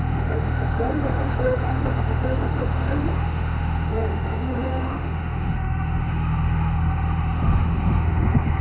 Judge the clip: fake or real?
fake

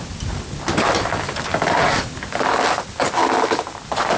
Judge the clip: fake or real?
real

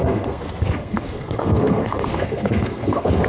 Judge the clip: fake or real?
fake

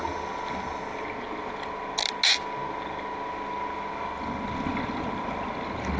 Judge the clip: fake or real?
real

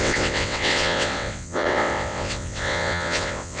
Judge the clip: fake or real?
fake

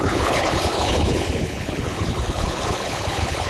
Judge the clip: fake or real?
fake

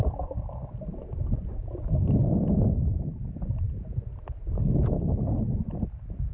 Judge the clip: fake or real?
real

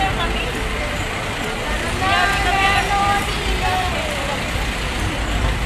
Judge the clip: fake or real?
fake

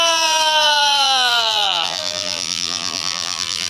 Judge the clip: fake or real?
fake